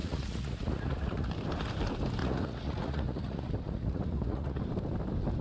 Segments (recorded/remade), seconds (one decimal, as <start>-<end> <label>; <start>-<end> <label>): 0.0-1.3 remade; 1.3-2.2 recorded; 2.2-4.6 remade; 4.6-5.4 recorded